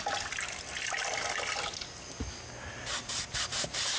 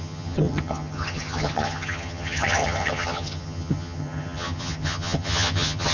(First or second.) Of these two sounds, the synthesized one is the second